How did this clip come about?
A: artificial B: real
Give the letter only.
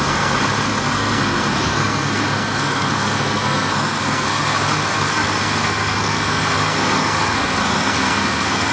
A